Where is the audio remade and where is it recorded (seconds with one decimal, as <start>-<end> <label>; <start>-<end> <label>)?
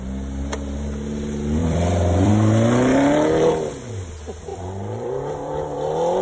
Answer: 0.0-1.6 recorded; 1.6-2.3 remade; 2.3-4.5 recorded; 4.5-5.6 remade; 5.6-6.2 recorded